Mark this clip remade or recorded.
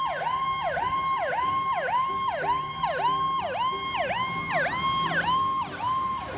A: recorded